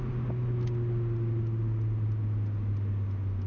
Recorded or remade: recorded